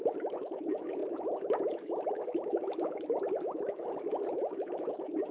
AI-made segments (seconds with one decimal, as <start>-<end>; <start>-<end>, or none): 0.0-5.3